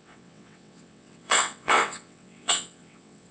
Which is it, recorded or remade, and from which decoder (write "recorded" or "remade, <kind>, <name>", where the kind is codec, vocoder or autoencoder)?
remade, vocoder, WaveNeXt